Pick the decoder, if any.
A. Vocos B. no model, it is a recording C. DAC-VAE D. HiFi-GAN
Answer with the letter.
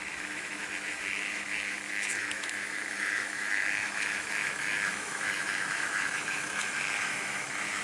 C